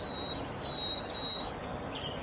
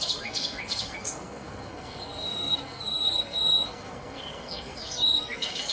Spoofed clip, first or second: second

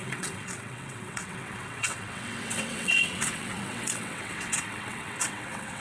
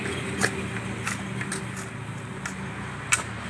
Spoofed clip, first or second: first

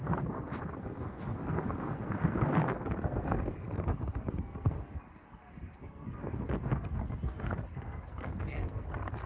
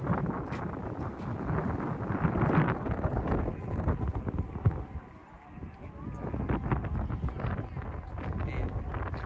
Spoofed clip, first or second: first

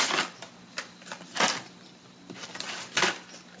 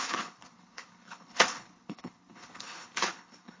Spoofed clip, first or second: second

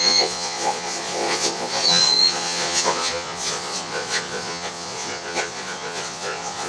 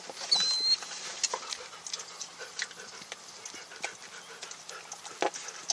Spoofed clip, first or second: first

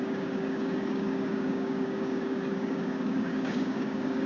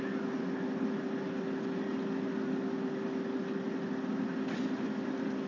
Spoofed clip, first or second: first